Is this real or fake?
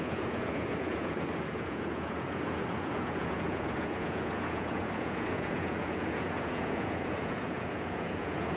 fake